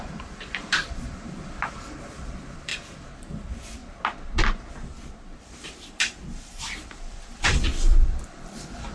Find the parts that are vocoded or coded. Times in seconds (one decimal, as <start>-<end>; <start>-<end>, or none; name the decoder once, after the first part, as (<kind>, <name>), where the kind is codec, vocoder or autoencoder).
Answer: 0.0-3.8 (vocoder, BigVGAN v2); 6.5-8.9